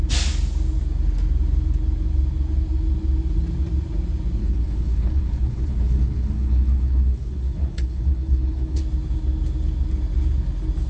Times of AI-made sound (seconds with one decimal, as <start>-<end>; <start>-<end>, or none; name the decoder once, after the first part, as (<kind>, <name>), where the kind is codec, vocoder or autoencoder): 4.4-8.8 (codec, HILCodec)